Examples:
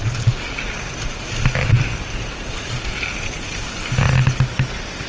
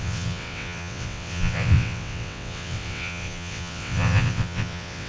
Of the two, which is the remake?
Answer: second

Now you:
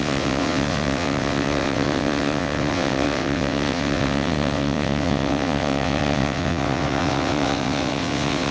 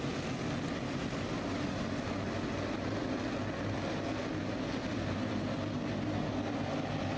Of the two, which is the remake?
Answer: first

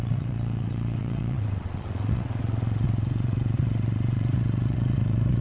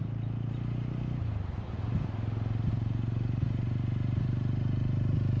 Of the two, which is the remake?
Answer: first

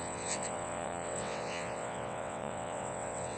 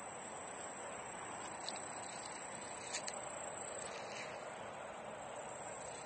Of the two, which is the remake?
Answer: first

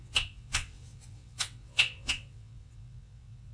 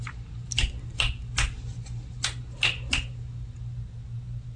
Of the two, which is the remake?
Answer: first